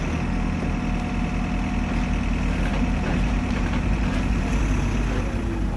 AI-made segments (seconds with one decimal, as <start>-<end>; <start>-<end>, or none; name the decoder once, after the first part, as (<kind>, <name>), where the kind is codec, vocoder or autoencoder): 2.7-4.6 (vocoder, BigVGAN v2)